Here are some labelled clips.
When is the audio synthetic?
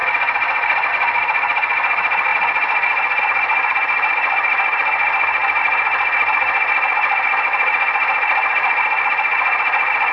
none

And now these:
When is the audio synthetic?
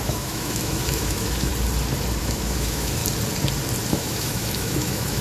0.0-1.5 (autoencoder, DAC-VAE); 2.2-3.0; 3.9-5.2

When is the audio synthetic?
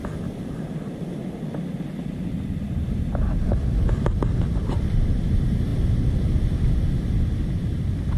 none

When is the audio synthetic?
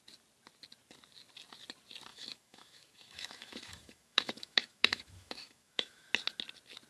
2.1-6.1 (autoencoder, DAC-VAE)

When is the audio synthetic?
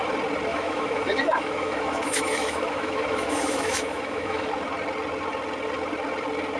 0.5-4.5 (autoencoder, DAC-VAE)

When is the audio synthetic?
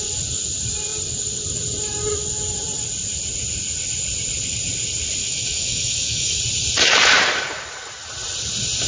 5.2-6.4 (autoencoder, DAC-VAE)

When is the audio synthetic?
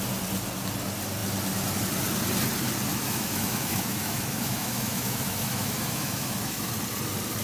2.9-6.7 (autoencoder, DAC-VAE)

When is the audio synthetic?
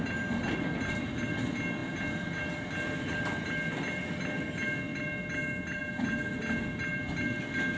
none